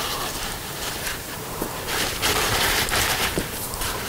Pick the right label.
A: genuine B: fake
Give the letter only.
B